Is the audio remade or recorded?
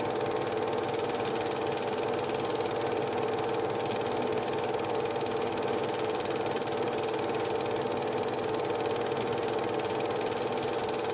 recorded